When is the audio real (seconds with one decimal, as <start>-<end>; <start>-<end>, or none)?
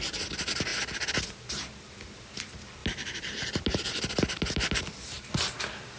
0.7-1.8